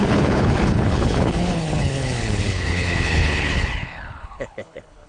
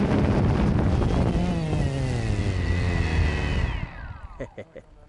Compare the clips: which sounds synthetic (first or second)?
first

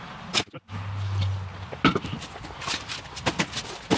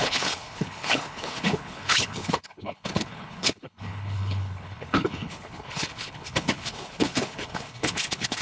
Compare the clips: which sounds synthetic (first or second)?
second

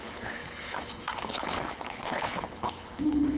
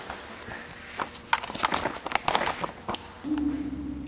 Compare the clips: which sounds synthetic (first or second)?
first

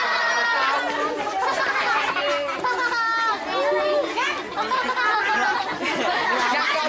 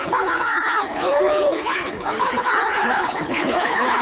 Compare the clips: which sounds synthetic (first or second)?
second